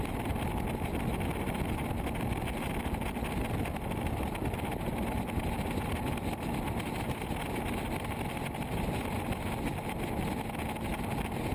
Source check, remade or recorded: recorded